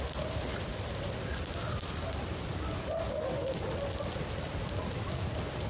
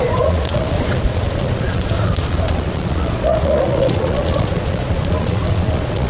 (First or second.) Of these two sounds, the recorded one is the first